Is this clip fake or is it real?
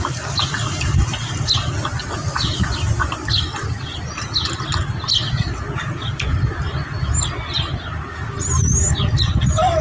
real